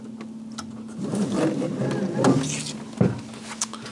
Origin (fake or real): real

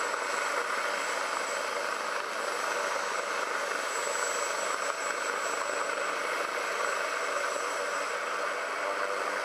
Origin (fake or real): real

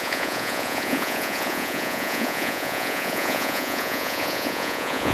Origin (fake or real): fake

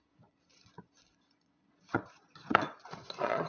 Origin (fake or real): fake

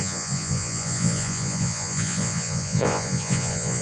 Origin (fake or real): fake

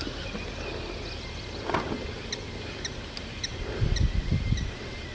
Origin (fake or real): real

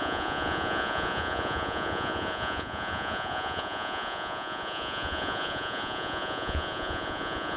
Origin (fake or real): fake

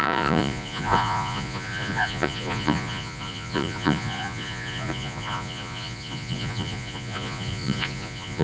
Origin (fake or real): fake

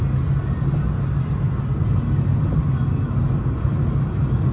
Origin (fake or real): real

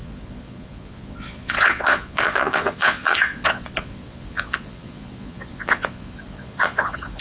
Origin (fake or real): fake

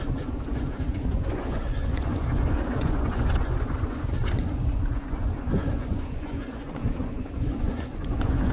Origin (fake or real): fake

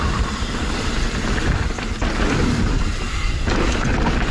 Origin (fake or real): real